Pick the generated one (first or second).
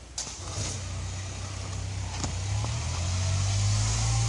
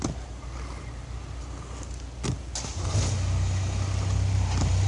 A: second